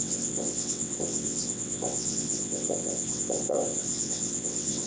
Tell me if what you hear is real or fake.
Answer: fake